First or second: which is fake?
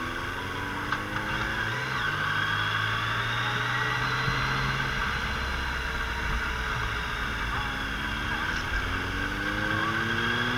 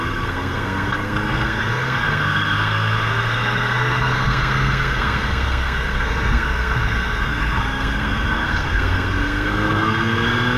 second